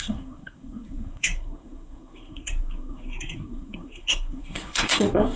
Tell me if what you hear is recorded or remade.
remade